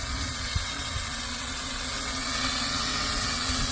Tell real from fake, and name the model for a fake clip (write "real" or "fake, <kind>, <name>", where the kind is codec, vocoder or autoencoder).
fake, vocoder, WaveNeXt